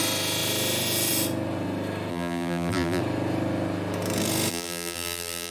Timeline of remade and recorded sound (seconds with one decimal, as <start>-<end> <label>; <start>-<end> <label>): 0.0-2.1 recorded; 2.1-3.0 remade; 3.0-4.5 recorded; 4.5-5.5 remade